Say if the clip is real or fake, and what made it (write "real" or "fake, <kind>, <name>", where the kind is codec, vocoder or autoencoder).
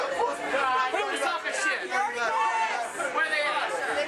real